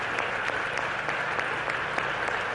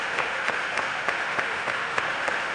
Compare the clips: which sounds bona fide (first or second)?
first